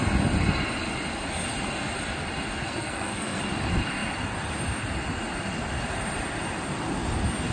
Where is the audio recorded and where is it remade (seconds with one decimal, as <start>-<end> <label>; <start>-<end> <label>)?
0.0-2.6 recorded; 2.6-3.4 remade; 3.4-7.5 recorded